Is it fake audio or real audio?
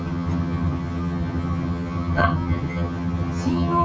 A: fake